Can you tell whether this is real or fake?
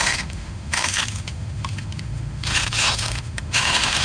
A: fake